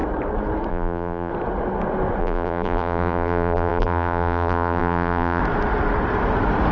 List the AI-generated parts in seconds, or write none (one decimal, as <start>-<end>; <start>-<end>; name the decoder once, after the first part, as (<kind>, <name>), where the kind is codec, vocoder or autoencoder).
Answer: 0.7-1.3 (vocoder, BigVGAN v2); 2.2-5.4